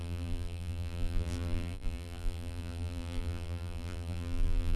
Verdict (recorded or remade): remade